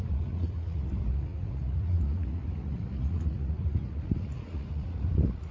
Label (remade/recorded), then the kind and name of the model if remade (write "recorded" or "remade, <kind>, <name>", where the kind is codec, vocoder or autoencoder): remade, vocoder, Vocos